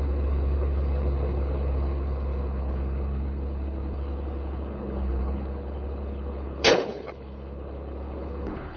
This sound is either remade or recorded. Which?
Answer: remade